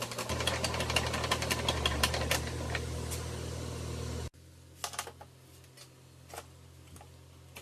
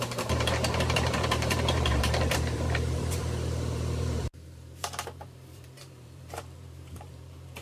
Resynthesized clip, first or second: second